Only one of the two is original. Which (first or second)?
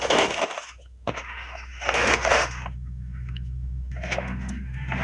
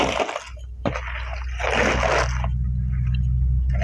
second